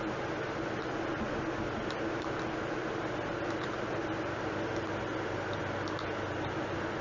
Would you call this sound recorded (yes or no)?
yes